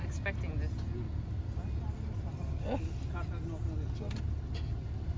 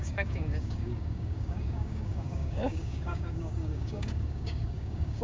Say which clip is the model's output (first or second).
second